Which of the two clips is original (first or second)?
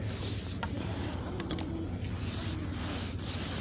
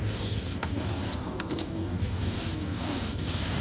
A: first